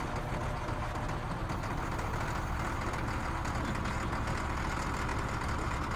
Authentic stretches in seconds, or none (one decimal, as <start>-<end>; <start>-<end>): 0.0-5.1

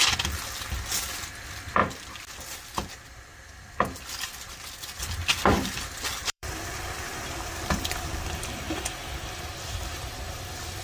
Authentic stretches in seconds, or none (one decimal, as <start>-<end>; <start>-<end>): 0.0-6.2; 8.7-10.8

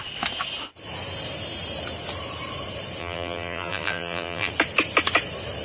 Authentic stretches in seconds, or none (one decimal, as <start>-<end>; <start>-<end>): 0.0-3.0; 4.5-5.6

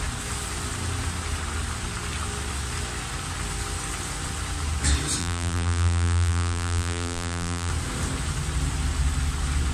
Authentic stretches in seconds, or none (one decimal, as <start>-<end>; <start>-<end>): 0.0-5.2; 7.7-9.7

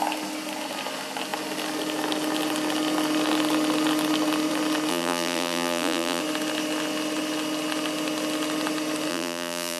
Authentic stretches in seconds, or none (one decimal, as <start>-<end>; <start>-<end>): 0.0-4.9; 6.2-9.1

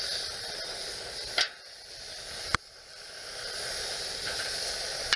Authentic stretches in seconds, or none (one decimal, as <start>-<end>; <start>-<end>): 0.0-0.8; 3.9-5.2

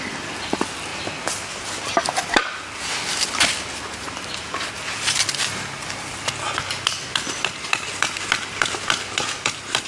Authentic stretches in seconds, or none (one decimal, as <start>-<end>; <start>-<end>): 0.0-9.9

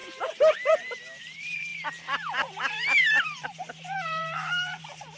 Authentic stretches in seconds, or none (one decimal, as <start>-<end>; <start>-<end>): 0.0-1.2